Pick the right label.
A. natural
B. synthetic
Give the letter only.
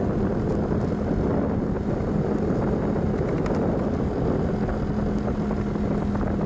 A